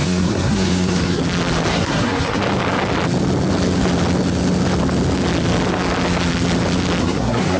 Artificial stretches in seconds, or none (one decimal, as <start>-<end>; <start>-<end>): 0.0-1.2; 1.7-2.4; 7.0-7.6